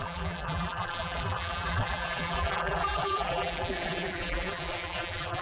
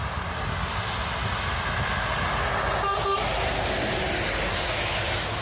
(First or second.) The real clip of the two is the second